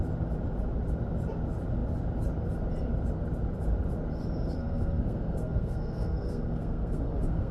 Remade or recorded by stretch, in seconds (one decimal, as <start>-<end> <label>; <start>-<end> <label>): 0.0-4.6 recorded; 4.6-7.5 remade